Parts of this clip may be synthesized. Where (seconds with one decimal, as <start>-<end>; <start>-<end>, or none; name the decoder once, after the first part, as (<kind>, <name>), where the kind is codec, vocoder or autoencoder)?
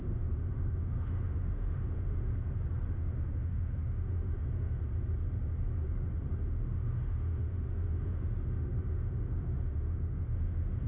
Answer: 0.0-2.3 (autoencoder, DAC-VAE); 2.9-4.8; 6.4-10.9